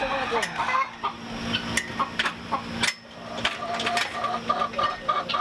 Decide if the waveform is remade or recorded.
recorded